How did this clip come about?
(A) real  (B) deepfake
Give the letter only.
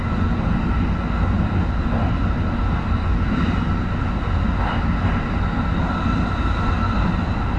A